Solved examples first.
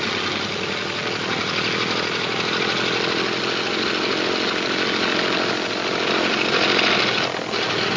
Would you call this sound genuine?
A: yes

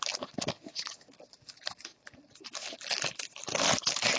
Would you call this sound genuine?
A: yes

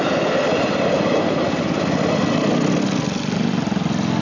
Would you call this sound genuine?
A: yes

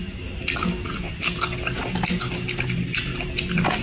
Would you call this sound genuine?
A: yes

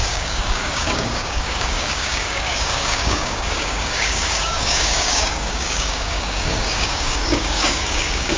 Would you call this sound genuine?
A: no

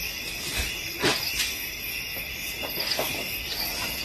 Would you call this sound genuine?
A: yes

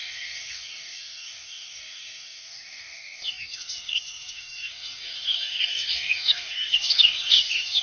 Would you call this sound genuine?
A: no